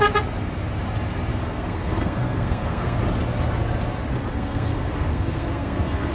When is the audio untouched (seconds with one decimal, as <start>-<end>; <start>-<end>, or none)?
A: 0.0-1.3; 3.0-4.3

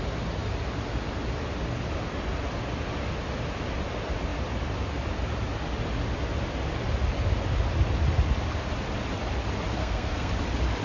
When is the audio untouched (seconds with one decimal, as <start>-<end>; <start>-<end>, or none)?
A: 0.0-9.8; 10.3-10.8